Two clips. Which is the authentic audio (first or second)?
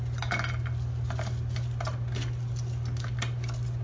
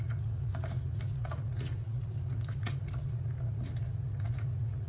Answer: first